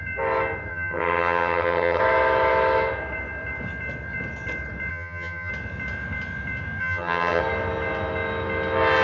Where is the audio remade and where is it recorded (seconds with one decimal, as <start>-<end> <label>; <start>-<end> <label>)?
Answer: 0.0-0.7 recorded; 0.7-2.0 remade; 2.0-4.9 recorded; 4.9-5.5 remade; 5.5-6.8 recorded; 6.8-7.4 remade; 7.4-9.0 recorded